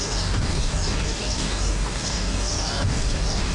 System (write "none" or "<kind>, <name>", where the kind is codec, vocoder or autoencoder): codec, DAC